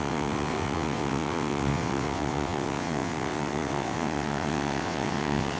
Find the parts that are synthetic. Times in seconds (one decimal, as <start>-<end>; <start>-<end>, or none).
0.0-5.6